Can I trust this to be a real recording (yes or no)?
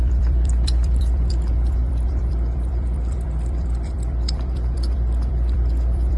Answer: no